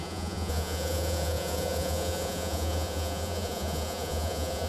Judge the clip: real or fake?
fake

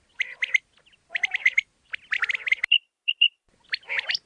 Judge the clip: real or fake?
real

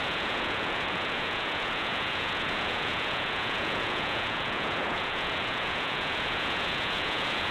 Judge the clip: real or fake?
fake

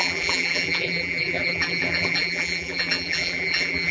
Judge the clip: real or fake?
fake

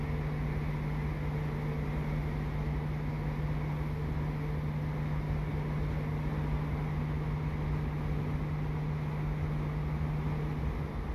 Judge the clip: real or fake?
real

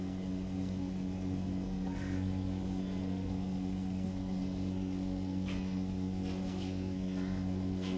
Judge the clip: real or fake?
fake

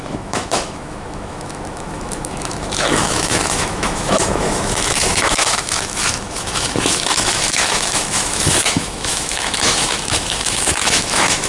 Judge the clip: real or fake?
fake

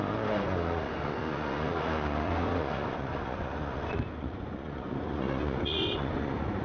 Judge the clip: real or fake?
fake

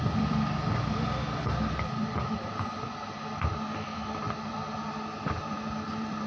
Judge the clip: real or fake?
fake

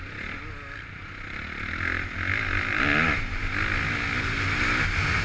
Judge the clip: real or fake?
real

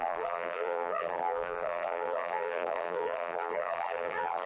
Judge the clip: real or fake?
fake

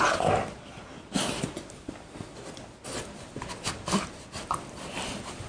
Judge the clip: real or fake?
real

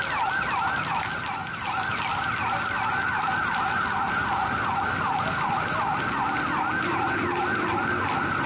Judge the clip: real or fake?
real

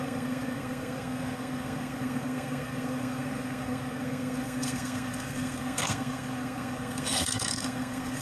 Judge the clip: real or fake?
fake